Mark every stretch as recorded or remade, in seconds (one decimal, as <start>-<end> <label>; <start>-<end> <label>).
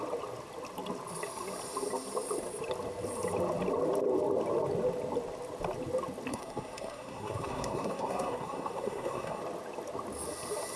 0.0-6.3 recorded; 6.3-9.4 remade; 9.4-10.8 recorded